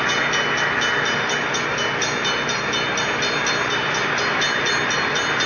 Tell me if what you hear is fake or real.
real